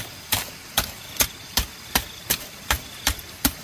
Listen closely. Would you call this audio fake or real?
fake